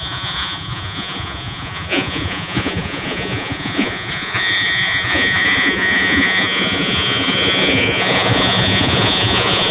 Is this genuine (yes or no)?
no